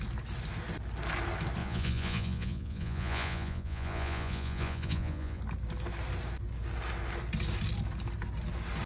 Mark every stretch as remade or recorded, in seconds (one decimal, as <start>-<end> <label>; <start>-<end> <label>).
0.0-1.6 recorded; 1.6-5.4 remade; 5.4-8.9 recorded